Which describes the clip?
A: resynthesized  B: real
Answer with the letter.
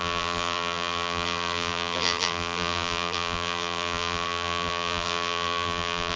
A